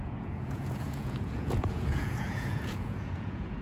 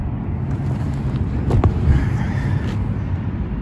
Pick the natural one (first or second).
second